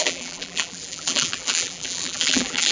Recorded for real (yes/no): no